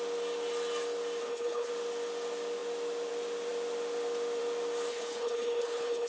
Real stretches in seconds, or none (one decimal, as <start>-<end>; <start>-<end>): 0.0-1.2; 1.7-4.9